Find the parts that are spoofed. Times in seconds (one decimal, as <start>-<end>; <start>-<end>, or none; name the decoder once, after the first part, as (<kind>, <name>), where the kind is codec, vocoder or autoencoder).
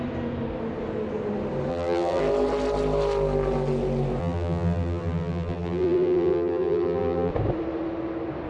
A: 1.7-2.2 (vocoder, BigVGAN v2); 4.2-7.3